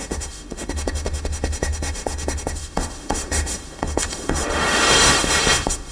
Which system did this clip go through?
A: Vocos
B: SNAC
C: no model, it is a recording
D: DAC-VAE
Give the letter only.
D